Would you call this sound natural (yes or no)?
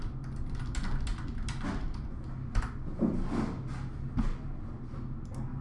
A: yes